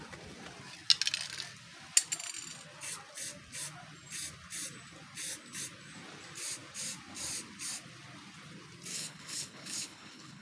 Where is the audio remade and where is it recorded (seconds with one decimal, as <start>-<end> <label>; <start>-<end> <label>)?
0.0-8.9 recorded; 8.9-10.4 remade